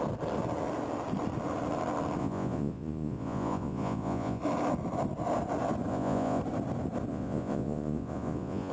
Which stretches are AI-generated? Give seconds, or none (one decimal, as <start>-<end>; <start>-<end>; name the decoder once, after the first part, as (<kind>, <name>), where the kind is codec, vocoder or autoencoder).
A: 2.2-4.4 (vocoder, Vocos); 5.9-6.4; 7.1-8.7